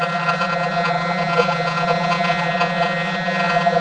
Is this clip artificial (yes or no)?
yes